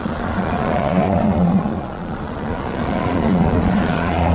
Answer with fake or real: fake